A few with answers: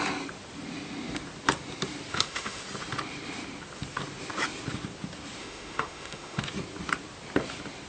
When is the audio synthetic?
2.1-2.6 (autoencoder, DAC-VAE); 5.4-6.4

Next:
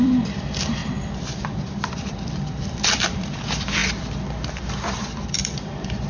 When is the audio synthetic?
0.0-0.8 (vocoder, BigVGAN v2); 1.7-6.1

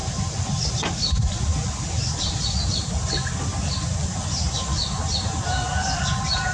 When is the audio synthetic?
none

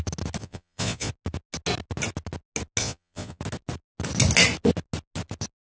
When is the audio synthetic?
0.4-1.1 (vocoder, Vocos); 2.8-3.4

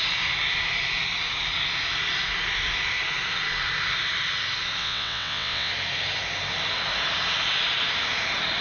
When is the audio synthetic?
4.8-5.7 (vocoder, WaveNeXt)

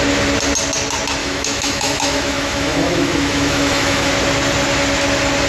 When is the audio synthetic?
1.2-4.1 (autoencoder, DAC-VAE)

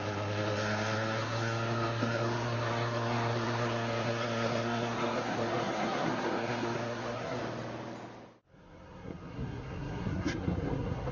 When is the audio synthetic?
0.0-7.4 (codec, SNAC); 8.5-11.1

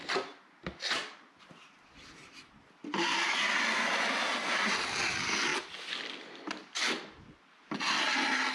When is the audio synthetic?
none